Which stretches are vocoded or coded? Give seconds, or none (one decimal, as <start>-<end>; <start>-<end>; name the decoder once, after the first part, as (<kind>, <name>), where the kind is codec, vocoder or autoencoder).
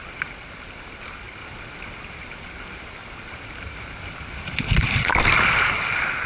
0.0-6.3 (vocoder, BigVGAN v2)